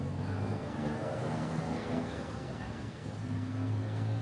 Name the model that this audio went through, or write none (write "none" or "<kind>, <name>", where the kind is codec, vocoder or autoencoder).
codec, SNAC